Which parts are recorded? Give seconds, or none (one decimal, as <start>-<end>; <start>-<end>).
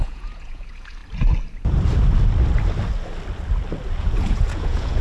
1.0-4.0